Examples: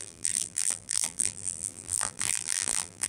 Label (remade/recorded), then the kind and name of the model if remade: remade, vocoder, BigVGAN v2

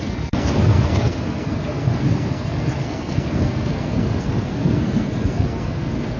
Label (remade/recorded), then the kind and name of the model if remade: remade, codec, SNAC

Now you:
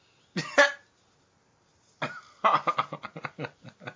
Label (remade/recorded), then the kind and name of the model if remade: recorded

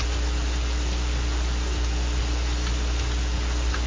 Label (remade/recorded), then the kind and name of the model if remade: recorded